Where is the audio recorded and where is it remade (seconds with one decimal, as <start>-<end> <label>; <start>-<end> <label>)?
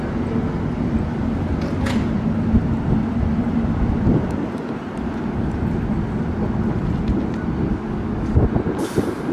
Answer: 0.0-7.7 recorded; 7.7-8.4 remade; 8.4-9.3 recorded